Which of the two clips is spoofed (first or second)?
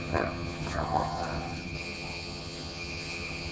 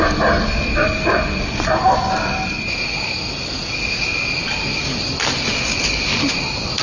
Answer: first